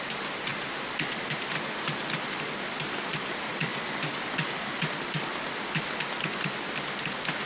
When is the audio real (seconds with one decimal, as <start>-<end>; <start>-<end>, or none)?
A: 0.0-7.5